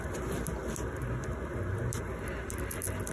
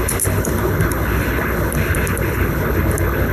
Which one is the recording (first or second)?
first